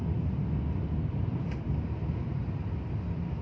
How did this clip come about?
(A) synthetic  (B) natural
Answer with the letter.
B